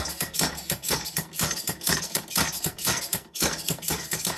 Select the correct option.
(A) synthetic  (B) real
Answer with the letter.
A